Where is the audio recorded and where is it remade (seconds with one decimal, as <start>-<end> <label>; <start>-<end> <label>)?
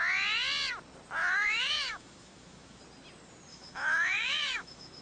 0.0-1.2 recorded; 1.2-2.8 remade; 2.8-3.5 recorded; 3.5-5.0 remade